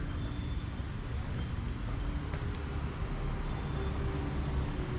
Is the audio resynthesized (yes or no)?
no